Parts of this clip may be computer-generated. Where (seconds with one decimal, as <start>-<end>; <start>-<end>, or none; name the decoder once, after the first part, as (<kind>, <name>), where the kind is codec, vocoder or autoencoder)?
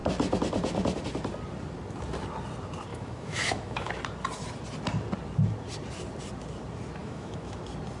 2.9-3.9 (autoencoder, DAC-VAE); 7.0-7.6